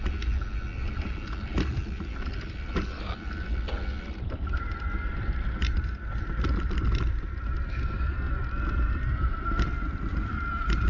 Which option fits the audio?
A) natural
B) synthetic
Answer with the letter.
A